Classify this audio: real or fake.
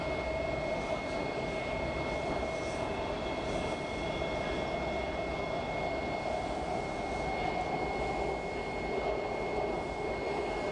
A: real